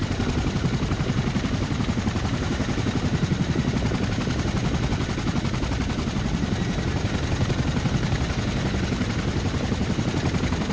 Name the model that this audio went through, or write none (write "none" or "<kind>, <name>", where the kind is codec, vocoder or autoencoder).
none